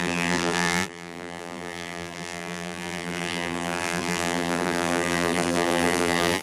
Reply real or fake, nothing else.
fake